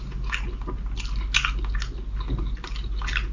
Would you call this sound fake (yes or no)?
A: no